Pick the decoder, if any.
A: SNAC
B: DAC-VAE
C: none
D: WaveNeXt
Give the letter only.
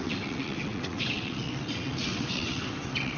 D